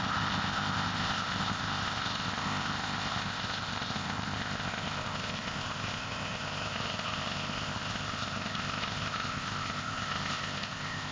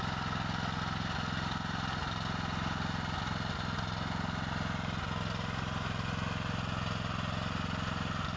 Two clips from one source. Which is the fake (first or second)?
first